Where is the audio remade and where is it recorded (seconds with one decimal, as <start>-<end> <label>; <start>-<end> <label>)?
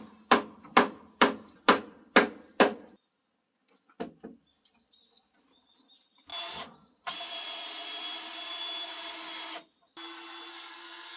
0.0-10.5 recorded; 10.5-11.2 remade